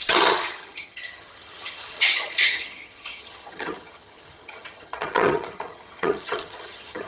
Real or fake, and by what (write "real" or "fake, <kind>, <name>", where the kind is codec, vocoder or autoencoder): fake, vocoder, HiFi-GAN